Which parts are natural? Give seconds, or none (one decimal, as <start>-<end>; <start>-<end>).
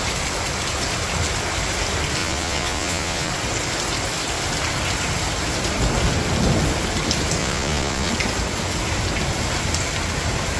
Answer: 0.0-2.2; 3.3-7.4; 8.1-10.6